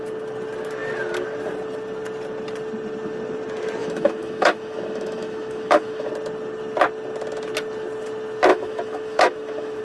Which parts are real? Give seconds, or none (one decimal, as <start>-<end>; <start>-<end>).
0.0-3.8; 6.1-8.5